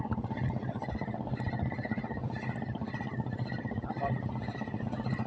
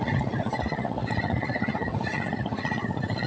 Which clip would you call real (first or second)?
first